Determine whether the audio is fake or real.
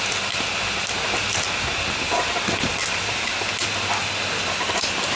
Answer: real